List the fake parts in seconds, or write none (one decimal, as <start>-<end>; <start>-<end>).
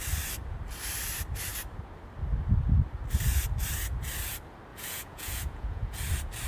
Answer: 4.7-6.0